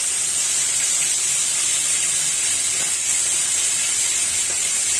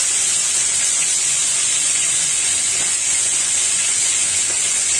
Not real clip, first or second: second